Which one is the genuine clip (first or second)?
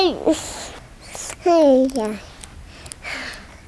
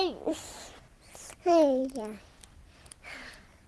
first